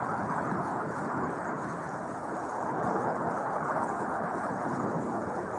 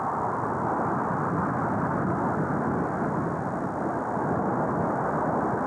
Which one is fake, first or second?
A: first